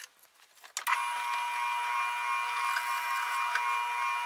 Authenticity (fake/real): real